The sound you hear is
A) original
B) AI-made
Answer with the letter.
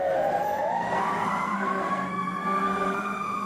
B